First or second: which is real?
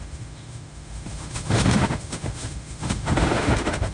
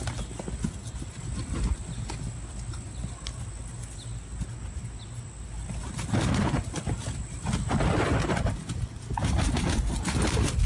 second